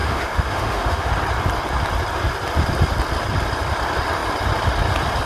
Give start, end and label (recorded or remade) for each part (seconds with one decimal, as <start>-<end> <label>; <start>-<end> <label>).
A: 0.0-1.1 remade; 1.1-5.3 recorded